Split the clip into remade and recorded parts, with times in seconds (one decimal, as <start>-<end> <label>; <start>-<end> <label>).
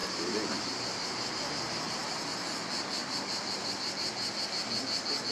0.0-3.0 recorded; 3.0-3.9 remade; 3.9-5.3 recorded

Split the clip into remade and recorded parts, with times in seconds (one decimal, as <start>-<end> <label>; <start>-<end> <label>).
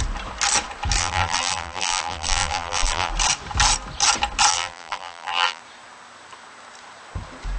0.0-1.0 recorded; 1.0-3.1 remade; 3.1-4.5 recorded; 4.5-5.6 remade; 5.6-7.6 recorded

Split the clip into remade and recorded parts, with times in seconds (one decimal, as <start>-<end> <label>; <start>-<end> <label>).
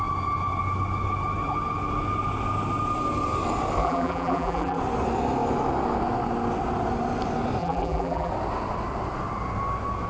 0.0-3.8 recorded; 3.8-4.8 remade; 4.8-7.6 recorded; 7.6-8.3 remade; 8.3-10.1 recorded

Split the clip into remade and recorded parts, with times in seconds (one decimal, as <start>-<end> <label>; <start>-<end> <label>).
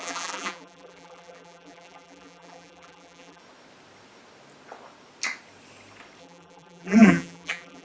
0.0-3.4 remade; 3.4-6.2 recorded; 6.2-7.8 remade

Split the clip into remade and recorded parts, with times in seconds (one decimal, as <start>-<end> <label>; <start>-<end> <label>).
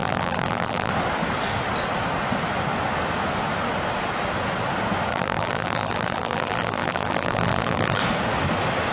0.0-0.9 remade; 0.9-5.1 recorded; 5.1-8.0 remade; 8.0-8.9 recorded